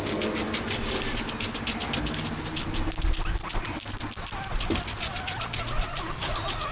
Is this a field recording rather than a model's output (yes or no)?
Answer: yes